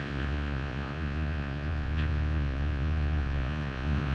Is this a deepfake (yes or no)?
yes